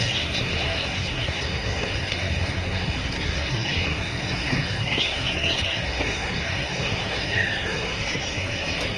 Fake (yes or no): yes